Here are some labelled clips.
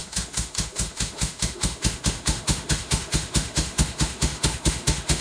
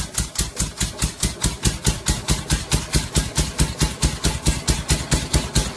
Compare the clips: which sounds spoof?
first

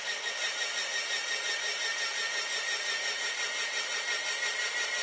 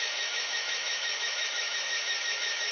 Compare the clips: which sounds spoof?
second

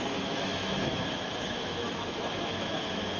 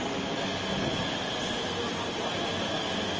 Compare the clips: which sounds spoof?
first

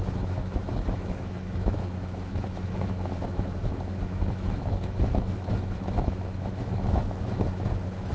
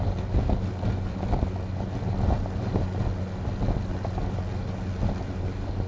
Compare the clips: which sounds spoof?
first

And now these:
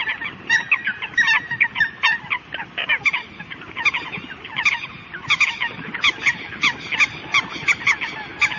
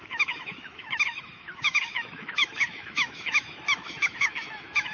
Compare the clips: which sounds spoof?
second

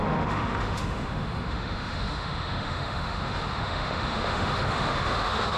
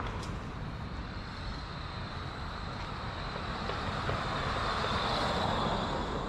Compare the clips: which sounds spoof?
first